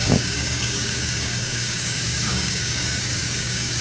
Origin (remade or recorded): remade